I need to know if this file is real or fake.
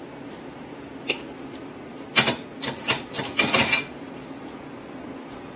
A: fake